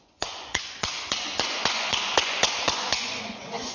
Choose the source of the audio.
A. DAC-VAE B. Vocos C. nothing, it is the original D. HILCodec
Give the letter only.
B